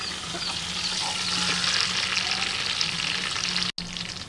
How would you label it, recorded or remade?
recorded